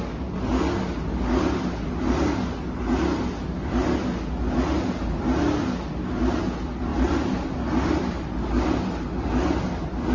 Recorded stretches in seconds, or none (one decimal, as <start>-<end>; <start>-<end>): 0.0-6.9; 8.0-10.1